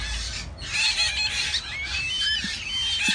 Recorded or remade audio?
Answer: recorded